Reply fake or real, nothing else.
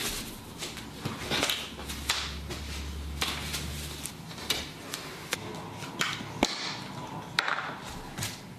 real